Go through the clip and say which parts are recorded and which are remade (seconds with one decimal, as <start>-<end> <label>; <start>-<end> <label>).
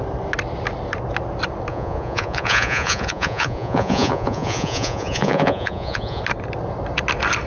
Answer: 0.0-1.7 recorded; 1.7-6.2 remade; 6.2-7.5 recorded